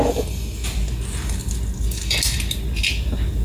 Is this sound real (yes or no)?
yes